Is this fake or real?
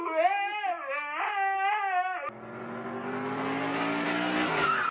real